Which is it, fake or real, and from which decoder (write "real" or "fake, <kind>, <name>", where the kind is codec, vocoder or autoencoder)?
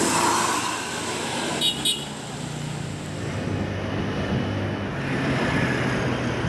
real